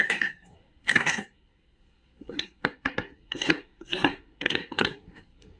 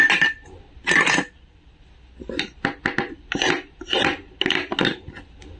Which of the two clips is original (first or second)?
second